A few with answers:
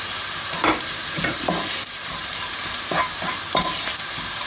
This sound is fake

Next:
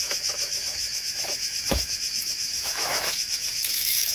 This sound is fake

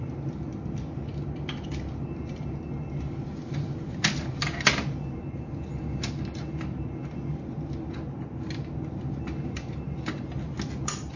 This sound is real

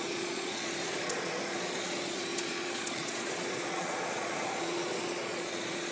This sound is fake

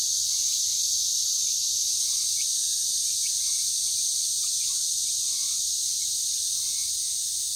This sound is real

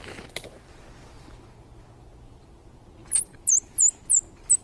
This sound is real